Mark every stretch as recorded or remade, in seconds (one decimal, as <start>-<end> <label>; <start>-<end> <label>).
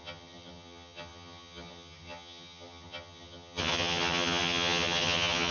0.0-5.5 remade